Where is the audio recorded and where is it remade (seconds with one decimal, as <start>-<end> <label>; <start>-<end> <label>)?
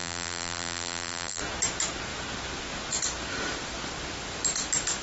0.0-1.4 remade; 1.4-5.0 recorded